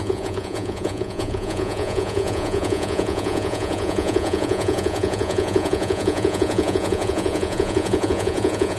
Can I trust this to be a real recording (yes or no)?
no